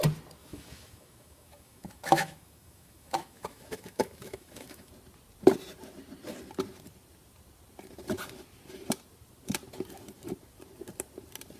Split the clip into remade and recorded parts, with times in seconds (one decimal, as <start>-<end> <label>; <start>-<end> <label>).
0.0-0.4 recorded; 0.4-4.9 remade; 4.9-11.6 recorded